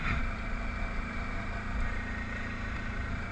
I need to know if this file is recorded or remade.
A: remade